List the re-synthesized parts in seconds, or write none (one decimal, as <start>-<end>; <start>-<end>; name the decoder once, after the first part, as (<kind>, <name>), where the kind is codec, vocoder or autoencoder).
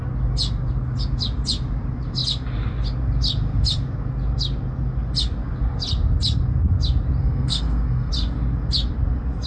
7.2-8.1 (codec, SNAC)